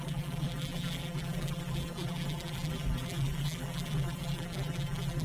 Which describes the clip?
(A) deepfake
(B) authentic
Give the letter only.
A